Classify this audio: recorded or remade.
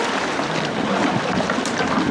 recorded